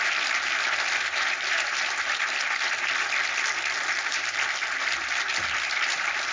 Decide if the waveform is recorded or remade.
remade